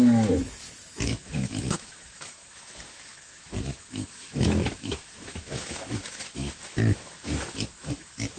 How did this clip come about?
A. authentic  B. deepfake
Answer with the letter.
B